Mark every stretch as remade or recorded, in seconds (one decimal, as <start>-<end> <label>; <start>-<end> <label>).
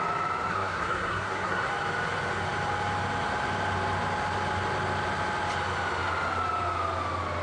0.0-0.5 recorded; 0.5-1.7 remade; 1.7-7.4 recorded